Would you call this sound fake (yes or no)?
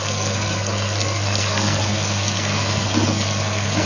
yes